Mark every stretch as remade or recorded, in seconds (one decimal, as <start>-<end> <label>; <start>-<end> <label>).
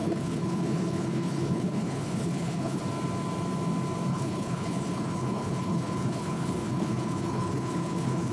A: 0.0-2.8 remade; 2.8-4.1 recorded; 4.1-8.3 remade